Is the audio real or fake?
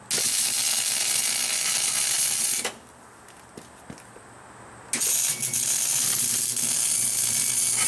real